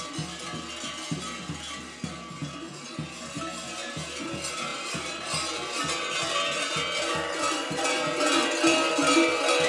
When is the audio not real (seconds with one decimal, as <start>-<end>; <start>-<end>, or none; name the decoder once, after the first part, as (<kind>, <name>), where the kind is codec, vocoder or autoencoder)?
none